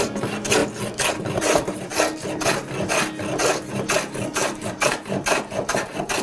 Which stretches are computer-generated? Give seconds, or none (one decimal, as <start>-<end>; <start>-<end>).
0.0-0.6; 1.4-1.9; 3.6-6.2